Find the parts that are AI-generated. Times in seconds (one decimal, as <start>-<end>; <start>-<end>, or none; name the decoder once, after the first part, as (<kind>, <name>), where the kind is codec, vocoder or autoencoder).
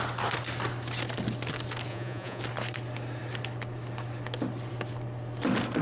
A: 1.9-2.4 (vocoder, Vocos)